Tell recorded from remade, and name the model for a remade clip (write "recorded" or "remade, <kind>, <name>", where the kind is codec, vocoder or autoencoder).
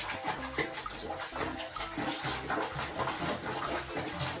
recorded